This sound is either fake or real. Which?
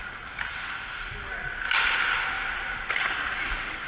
real